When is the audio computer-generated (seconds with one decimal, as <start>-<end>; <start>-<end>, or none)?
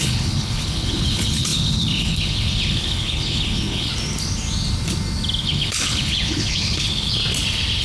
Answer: 0.0-3.9; 5.4-7.2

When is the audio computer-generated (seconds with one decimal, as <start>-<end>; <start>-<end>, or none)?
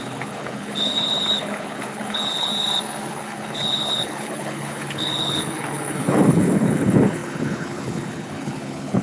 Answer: 0.0-2.5; 3.1-9.0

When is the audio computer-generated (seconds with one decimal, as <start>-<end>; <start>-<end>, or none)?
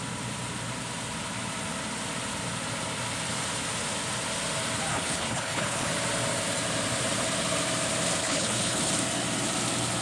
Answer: 4.9-5.9; 8.2-8.9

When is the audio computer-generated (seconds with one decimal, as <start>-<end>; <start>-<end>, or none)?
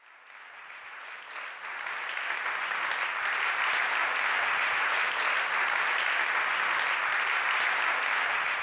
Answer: none